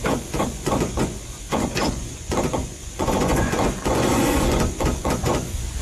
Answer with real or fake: fake